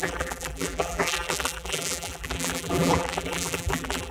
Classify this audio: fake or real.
fake